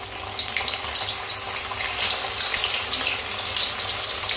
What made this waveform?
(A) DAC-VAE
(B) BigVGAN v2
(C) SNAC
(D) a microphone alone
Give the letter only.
D